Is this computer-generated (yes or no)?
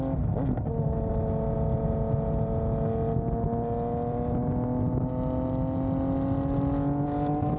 no